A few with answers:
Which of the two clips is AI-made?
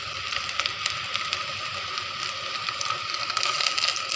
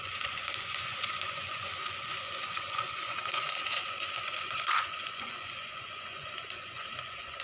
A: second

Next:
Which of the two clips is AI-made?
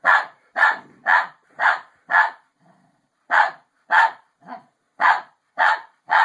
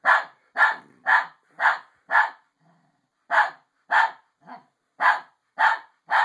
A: first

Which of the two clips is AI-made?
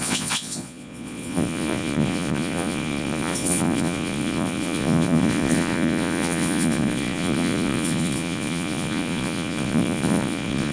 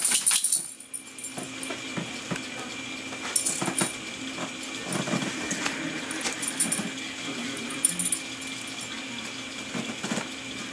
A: first